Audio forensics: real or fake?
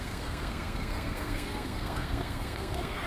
fake